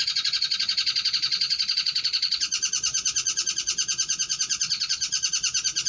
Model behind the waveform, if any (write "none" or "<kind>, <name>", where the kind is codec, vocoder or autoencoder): vocoder, Vocos